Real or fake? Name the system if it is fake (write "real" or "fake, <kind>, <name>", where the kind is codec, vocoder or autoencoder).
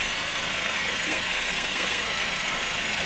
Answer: fake, codec, SNAC